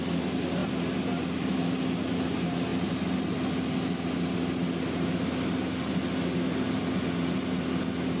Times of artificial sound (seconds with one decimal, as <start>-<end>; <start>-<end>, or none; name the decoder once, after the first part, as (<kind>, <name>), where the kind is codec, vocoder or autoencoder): none